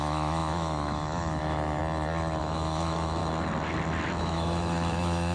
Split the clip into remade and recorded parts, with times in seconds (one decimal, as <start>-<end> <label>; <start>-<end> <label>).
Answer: 0.0-1.8 remade; 1.8-2.4 recorded; 2.4-3.2 remade; 3.2-4.2 recorded; 4.2-5.3 remade